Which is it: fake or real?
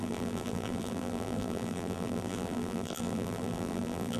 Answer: fake